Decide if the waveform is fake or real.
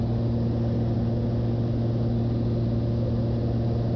real